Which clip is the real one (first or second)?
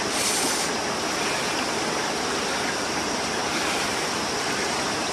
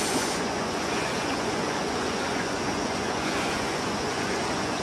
first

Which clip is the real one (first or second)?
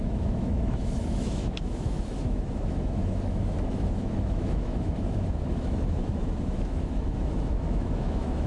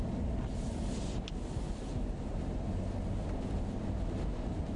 second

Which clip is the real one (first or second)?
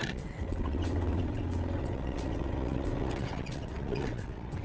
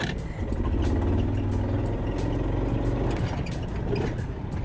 second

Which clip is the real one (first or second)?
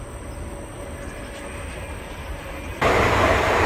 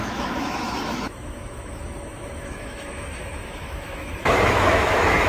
first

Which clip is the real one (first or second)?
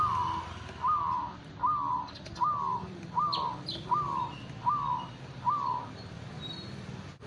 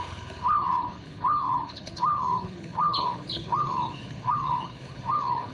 first